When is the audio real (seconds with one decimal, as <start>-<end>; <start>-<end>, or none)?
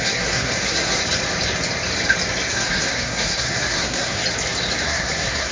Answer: 1.0-2.5; 4.2-4.8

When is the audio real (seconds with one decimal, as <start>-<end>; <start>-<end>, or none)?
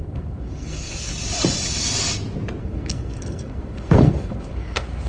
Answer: 1.1-2.6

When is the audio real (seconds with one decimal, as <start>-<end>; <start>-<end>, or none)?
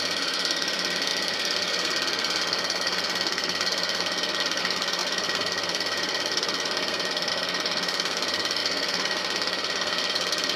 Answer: none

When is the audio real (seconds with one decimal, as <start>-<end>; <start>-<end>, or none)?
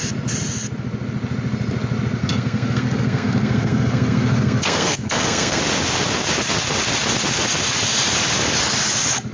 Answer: 0.0-2.2; 5.6-9.3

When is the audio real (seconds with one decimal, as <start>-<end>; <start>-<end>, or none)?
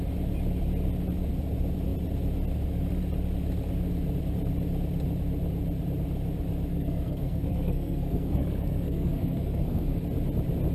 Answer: 0.0-6.7; 10.0-10.7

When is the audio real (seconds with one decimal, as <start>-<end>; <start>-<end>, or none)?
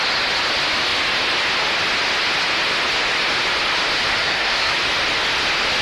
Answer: 0.0-4.2; 4.7-5.8